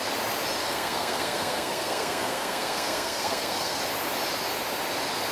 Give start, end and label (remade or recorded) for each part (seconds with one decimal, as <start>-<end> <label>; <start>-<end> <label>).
0.0-0.6 recorded; 0.6-3.8 remade; 3.8-5.3 recorded